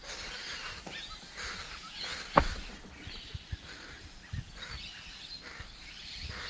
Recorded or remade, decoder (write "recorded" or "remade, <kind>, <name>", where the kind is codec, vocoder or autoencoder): recorded